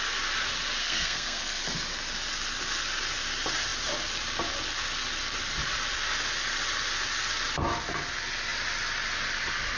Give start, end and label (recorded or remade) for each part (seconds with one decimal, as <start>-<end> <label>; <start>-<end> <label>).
0.0-0.8 recorded; 0.8-1.6 remade; 1.6-9.8 recorded